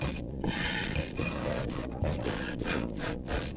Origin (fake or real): fake